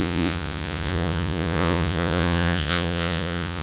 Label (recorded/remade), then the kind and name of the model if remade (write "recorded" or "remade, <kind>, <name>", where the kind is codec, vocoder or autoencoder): remade, vocoder, Vocos